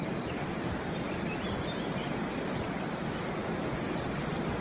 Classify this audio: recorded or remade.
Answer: recorded